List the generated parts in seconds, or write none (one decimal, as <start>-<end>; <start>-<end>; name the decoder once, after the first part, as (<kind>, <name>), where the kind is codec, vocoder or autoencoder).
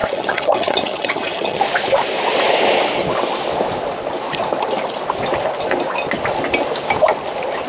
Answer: 0.0-1.6 (vocoder, HiFi-GAN)